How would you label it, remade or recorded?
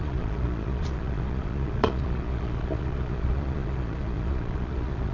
remade